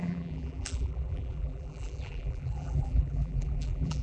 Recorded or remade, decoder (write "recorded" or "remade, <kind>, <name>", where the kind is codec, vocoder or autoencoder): remade, vocoder, BigVGAN v2